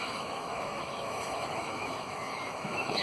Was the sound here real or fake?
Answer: fake